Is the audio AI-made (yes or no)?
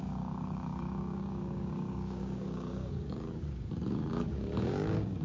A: yes